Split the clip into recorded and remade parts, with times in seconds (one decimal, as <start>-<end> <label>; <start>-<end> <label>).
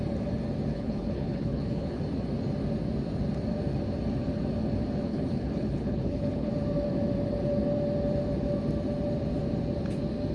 0.0-0.7 recorded; 0.7-2.0 remade; 2.0-5.1 recorded; 5.1-6.5 remade; 6.5-10.3 recorded